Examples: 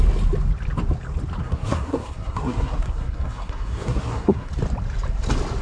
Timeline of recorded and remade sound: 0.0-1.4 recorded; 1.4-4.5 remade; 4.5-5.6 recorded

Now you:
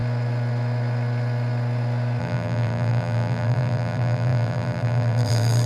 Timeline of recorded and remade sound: 0.0-2.2 recorded; 2.2-5.7 remade

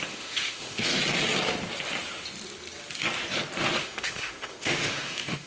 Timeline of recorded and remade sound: 0.0-0.9 remade; 0.9-3.8 recorded; 3.8-5.5 remade

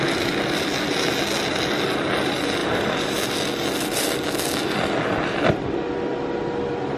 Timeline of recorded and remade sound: 0.0-2.6 recorded; 2.6-3.2 remade; 3.2-7.0 recorded